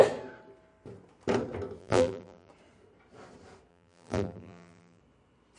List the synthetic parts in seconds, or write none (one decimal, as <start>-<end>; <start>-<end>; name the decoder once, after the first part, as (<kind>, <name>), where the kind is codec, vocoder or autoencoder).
1.8-2.5 (vocoder, BigVGAN v2); 3.7-5.0